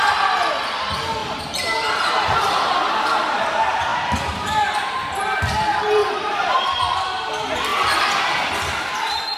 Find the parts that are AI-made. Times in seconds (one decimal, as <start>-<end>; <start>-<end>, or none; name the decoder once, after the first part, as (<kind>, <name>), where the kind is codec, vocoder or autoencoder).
3.9-5.0 (vocoder, BigVGAN v2); 6.0-6.8